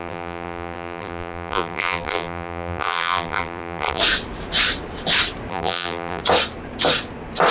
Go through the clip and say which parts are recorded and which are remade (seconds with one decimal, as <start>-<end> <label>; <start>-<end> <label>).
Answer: 0.0-4.0 remade; 4.0-5.5 recorded; 5.5-6.2 remade; 6.2-7.5 recorded